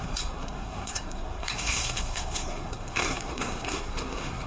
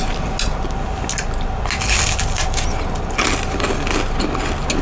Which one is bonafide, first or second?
second